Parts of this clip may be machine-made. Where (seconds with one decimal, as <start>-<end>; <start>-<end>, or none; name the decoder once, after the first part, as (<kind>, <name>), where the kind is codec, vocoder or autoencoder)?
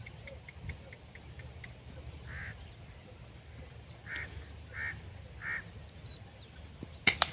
none